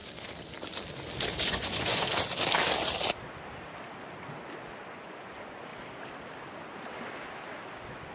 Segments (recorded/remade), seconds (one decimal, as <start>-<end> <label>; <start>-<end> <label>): 0.0-1.4 recorded; 1.4-2.1 remade; 2.1-4.8 recorded; 4.8-5.7 remade; 5.7-8.1 recorded